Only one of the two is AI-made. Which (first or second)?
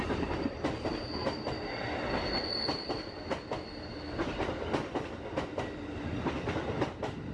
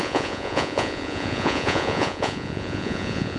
second